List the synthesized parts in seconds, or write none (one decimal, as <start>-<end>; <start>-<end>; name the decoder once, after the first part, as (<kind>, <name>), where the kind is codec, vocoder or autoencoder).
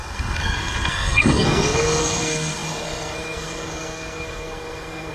0.0-5.1 (codec, SNAC)